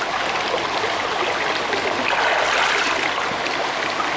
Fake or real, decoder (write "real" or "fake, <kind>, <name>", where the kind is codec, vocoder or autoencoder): real